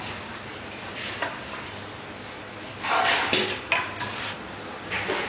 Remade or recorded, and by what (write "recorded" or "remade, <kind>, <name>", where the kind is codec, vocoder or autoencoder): recorded